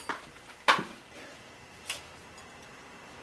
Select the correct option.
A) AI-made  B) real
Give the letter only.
B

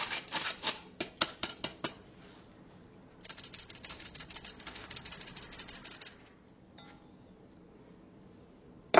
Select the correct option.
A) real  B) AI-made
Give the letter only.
A